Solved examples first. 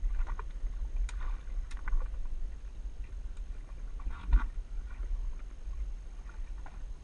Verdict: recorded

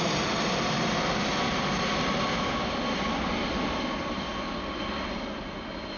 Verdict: recorded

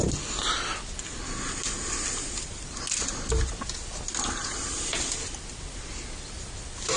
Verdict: recorded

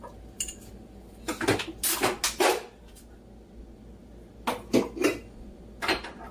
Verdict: recorded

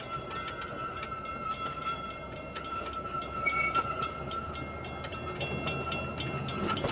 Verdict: recorded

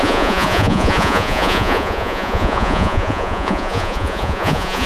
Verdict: remade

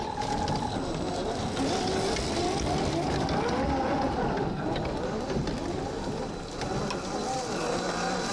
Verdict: recorded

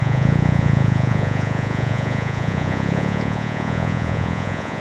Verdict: remade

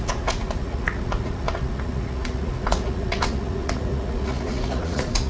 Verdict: remade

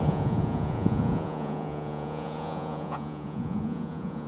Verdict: remade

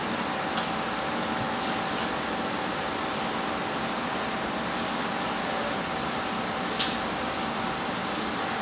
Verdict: recorded